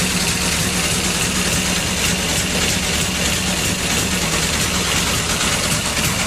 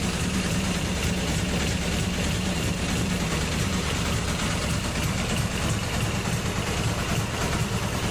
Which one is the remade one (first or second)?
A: second